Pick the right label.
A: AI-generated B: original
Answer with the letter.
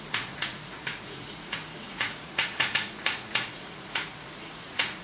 A